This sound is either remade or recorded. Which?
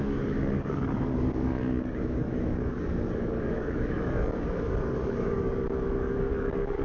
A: remade